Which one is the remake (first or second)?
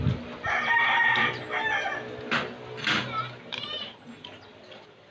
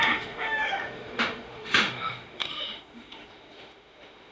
second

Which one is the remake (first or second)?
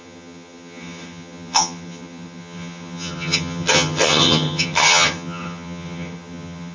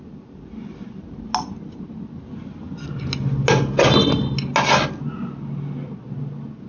first